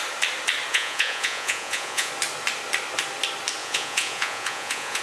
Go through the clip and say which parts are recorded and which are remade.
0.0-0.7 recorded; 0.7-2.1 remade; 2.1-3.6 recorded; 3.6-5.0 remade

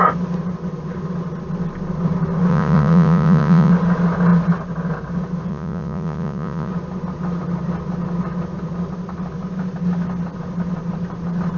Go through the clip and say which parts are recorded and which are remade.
0.0-2.5 recorded; 2.5-3.7 remade; 3.7-5.5 recorded; 5.5-6.7 remade; 6.7-11.6 recorded

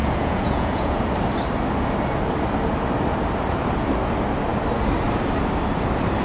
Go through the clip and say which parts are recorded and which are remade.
0.0-0.9 remade; 0.9-6.2 recorded

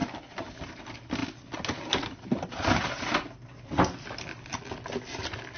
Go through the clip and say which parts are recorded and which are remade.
0.0-5.6 recorded

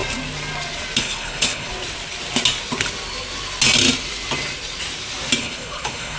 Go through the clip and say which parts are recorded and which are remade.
0.0-1.0 recorded; 1.0-1.7 remade; 1.7-5.4 recorded; 5.4-6.2 remade

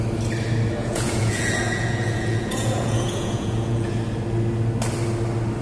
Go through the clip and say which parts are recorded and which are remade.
0.0-0.8 recorded; 0.8-3.9 remade; 3.9-5.6 recorded